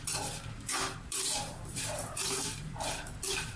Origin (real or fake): fake